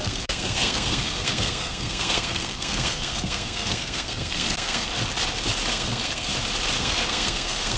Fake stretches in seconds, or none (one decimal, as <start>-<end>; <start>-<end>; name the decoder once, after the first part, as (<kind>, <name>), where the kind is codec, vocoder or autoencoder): 0.0-4.9 (codec, SNAC); 5.7-6.3; 6.8-7.8